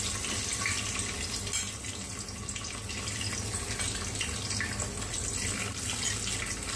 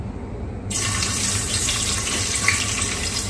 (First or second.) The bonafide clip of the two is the first